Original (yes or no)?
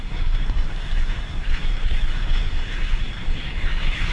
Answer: no